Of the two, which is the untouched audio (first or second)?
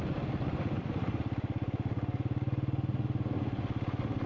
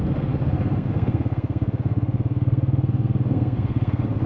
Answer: first